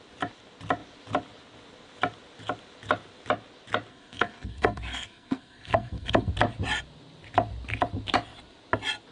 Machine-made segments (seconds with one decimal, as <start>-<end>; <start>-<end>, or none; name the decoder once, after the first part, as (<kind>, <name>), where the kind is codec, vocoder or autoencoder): 3.9-6.3 (codec, SNAC)